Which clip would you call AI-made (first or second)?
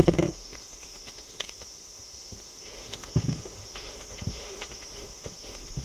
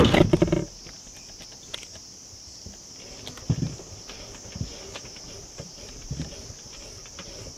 first